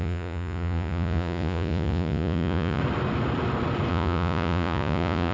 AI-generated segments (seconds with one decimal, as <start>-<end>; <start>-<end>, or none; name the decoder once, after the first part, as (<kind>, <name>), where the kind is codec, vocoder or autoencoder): 0.0-2.8 (vocoder, Vocos); 3.9-5.3